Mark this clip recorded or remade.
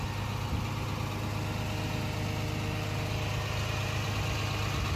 recorded